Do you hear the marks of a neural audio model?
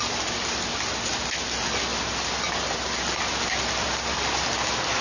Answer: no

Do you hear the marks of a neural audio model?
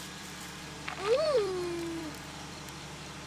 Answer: yes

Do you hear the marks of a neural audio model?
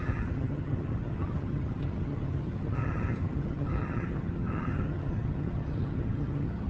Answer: yes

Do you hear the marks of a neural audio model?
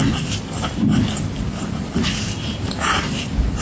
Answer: no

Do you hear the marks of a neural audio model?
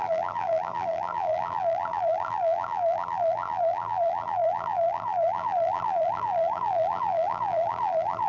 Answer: yes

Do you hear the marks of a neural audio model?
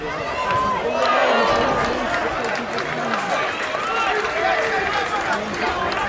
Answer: no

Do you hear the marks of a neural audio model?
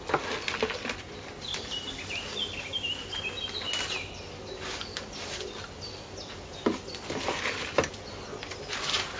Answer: no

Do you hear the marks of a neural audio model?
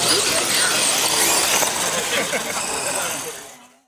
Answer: no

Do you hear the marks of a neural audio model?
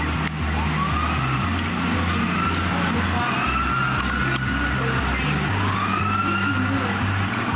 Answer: no